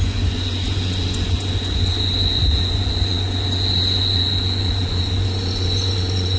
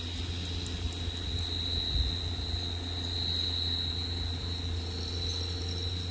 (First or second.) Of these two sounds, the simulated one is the first